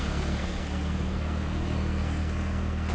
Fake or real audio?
fake